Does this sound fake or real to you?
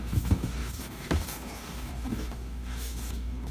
fake